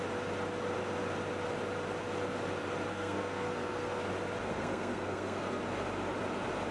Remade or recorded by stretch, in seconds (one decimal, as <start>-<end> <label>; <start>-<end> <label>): 0.0-2.9 recorded; 2.9-4.0 remade; 4.0-4.5 recorded; 4.5-5.6 remade; 5.6-6.7 recorded